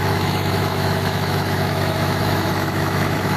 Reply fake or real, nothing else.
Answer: fake